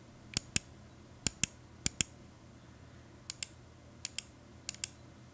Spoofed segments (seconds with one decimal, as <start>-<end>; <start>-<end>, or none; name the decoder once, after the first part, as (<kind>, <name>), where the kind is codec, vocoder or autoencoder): none